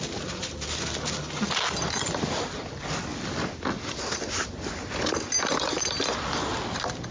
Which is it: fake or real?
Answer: real